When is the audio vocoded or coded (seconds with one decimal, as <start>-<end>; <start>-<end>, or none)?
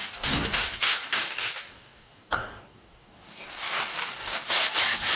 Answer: 0.0-5.2